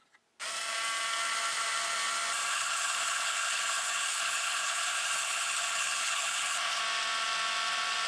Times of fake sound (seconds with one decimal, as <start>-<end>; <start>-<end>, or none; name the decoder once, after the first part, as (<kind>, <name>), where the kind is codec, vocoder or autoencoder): 2.5-6.8 (codec, HILCodec)